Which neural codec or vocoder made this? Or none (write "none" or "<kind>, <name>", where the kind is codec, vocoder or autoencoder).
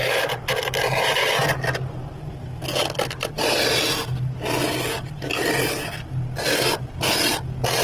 none